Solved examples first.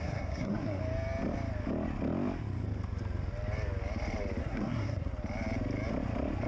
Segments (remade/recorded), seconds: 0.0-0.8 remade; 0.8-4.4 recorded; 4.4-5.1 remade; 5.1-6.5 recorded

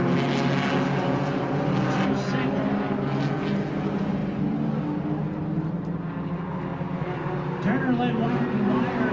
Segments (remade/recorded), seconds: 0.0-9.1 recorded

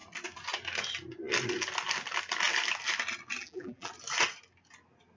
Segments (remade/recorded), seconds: 0.0-3.4 recorded; 3.4-3.9 remade; 3.9-5.2 recorded

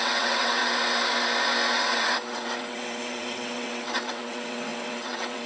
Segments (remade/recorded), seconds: 0.0-0.6 remade; 0.6-1.8 recorded; 1.8-5.5 remade